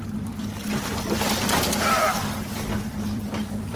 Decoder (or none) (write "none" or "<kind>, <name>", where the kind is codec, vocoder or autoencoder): vocoder, BigVGAN v2